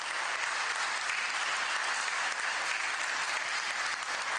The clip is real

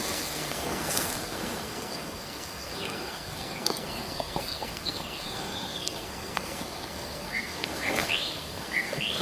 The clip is fake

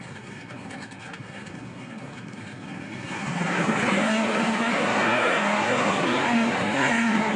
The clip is fake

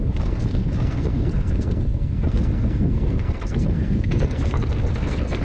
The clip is fake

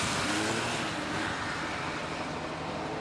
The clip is real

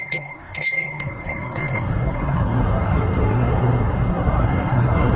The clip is fake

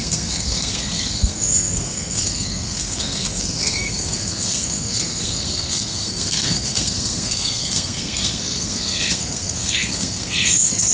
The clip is fake